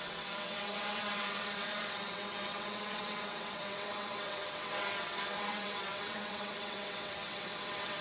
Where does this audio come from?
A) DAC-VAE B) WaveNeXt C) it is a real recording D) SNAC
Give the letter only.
B